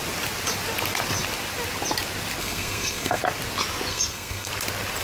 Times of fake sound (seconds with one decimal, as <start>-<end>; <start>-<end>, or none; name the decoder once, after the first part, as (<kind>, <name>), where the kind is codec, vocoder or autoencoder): 2.4-3.2 (codec, SNAC); 3.9-4.5